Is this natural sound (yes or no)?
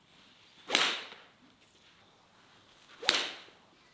yes